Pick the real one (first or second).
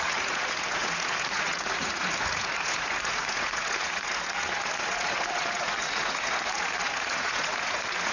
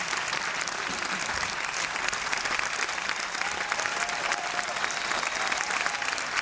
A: second